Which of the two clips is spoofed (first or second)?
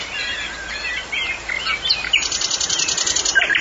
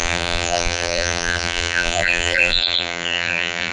second